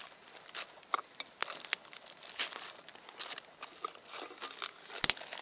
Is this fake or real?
real